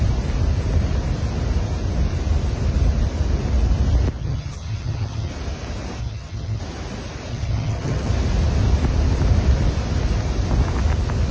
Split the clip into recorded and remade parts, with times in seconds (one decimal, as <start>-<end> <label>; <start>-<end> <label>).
0.0-4.2 recorded; 4.2-5.3 remade; 5.3-6.0 recorded; 6.0-6.6 remade; 6.6-7.3 recorded; 7.3-8.1 remade; 8.1-11.3 recorded